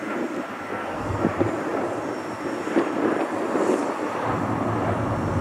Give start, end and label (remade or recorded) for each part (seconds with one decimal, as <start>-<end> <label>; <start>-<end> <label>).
0.0-0.7 recorded; 0.7-1.2 remade; 1.2-5.4 recorded